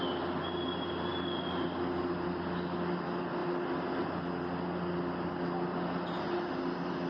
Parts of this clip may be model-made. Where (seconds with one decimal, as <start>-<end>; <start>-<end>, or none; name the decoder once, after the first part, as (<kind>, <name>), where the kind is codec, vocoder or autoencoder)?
none